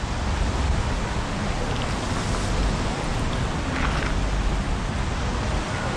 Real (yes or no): yes